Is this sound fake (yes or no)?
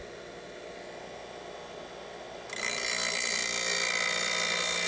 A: no